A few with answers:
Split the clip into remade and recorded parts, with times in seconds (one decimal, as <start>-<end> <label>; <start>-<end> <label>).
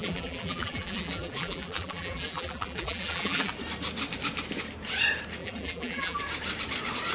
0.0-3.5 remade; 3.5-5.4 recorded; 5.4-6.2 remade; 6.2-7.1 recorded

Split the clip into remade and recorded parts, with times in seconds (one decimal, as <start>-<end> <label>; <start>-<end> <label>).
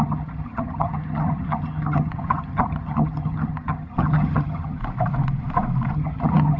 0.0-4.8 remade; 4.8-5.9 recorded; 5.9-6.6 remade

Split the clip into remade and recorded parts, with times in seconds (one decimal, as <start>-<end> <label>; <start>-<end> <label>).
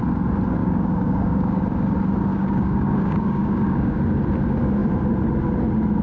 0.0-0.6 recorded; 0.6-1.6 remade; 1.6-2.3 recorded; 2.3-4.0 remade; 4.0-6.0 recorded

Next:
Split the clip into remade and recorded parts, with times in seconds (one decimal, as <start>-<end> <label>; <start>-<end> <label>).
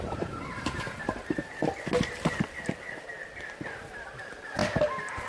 0.0-1.6 remade; 1.6-4.1 recorded; 4.1-4.6 remade; 4.6-5.3 recorded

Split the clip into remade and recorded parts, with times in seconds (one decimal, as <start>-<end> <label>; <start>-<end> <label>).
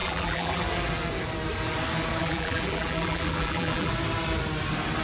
0.0-0.6 remade; 0.6-2.2 recorded; 2.2-3.9 remade; 3.9-5.0 recorded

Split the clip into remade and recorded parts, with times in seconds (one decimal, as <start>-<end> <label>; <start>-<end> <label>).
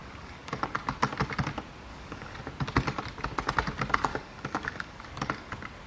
0.0-0.6 remade; 0.6-1.9 recorded; 1.9-2.4 remade; 2.4-4.1 recorded; 4.1-5.5 remade; 5.5-5.9 recorded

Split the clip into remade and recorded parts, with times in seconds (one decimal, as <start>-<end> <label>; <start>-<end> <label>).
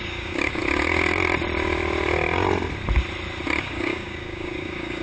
0.0-0.6 remade; 0.6-3.6 recorded; 3.6-5.0 remade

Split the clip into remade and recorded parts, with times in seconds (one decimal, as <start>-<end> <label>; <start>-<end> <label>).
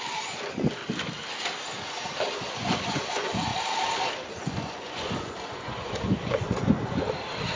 0.0-0.8 remade; 0.8-2.5 recorded; 2.5-3.5 remade; 3.5-4.3 recorded; 4.3-7.0 remade; 7.0-7.6 recorded